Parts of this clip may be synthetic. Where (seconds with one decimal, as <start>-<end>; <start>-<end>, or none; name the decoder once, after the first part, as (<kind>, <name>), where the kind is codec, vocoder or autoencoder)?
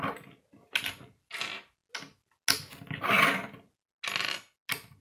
none